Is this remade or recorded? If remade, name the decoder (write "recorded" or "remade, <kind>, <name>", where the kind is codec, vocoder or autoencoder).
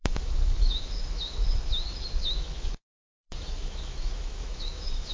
remade, autoencoder, DAC-VAE